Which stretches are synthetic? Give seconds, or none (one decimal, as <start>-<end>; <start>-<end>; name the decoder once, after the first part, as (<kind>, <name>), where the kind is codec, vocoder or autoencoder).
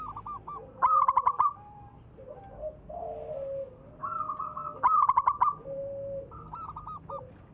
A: none